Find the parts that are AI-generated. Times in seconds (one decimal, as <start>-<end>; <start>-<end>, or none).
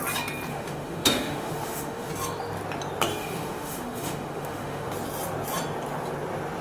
0.5-2.1; 3.2-4.9